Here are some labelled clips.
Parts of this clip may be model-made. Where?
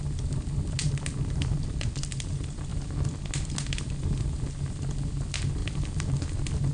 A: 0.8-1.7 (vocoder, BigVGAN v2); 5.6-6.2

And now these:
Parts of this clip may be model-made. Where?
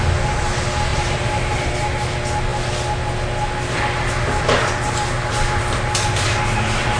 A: 0.9-1.6 (vocoder, BigVGAN v2)